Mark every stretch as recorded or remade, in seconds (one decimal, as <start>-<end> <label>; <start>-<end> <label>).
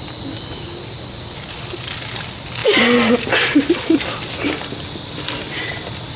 0.0-6.2 recorded